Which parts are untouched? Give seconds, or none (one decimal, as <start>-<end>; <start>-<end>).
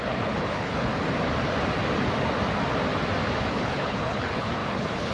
0.9-3.5